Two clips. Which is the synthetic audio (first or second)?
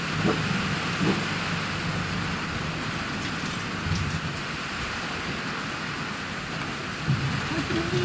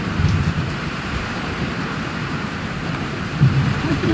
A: second